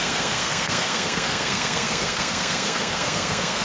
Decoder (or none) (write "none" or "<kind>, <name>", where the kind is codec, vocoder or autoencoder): codec, SNAC